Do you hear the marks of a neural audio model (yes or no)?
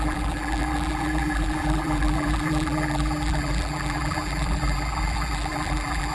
yes